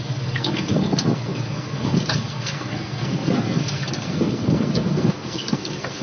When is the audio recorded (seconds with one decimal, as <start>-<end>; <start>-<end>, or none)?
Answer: none